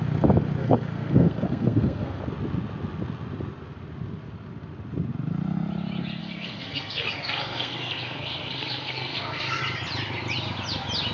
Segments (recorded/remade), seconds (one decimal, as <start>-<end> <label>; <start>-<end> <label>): 0.0-0.6 recorded; 0.6-2.2 remade; 2.2-6.2 recorded; 6.2-9.6 remade; 9.6-11.1 recorded